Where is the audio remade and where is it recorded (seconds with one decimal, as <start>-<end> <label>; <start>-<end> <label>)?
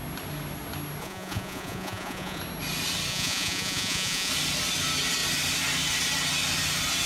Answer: 0.0-1.0 recorded; 1.0-2.4 remade; 2.4-3.1 recorded; 3.1-4.3 remade; 4.3-7.1 recorded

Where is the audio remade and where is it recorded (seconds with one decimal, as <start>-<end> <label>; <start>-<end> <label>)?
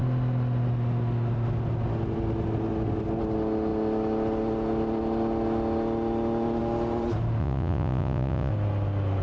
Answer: 0.0-7.4 recorded; 7.4-8.5 remade; 8.5-9.2 recorded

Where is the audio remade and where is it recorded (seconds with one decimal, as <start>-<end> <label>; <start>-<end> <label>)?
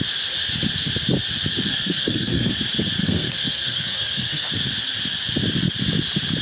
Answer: 0.0-1.7 recorded; 1.7-2.5 remade; 2.5-3.0 recorded; 3.0-4.5 remade; 4.5-6.4 recorded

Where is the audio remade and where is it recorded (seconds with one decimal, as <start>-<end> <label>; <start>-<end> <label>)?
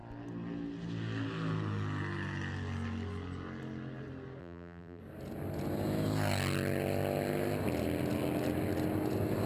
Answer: 0.0-4.4 recorded; 4.4-5.0 remade; 5.0-9.5 recorded